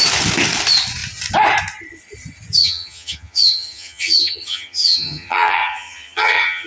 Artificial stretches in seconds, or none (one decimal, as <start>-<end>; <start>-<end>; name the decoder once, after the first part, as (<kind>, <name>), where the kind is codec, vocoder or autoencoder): 2.6-6.7 (vocoder, HiFi-GAN)